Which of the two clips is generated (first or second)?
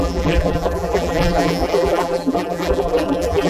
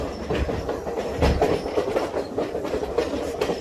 first